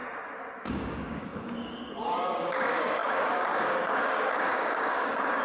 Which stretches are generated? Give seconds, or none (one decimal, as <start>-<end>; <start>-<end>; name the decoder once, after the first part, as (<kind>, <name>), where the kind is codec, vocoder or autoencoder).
0.7-5.4 (codec, DAC)